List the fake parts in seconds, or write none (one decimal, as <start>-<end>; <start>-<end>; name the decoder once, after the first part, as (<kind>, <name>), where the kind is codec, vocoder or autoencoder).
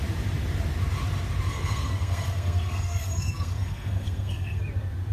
1.5-4.6 (codec, SNAC)